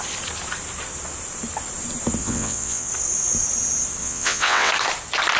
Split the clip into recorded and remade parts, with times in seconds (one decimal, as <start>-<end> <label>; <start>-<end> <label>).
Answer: 0.0-2.2 recorded; 2.2-2.9 remade; 2.9-4.0 recorded; 4.0-4.7 remade; 4.7-5.4 recorded